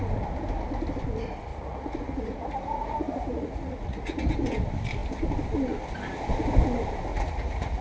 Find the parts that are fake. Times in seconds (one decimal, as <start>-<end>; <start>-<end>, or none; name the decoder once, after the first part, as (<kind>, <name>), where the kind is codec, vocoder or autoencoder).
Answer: 1.5-4.3 (vocoder, Vocos); 7.1-7.8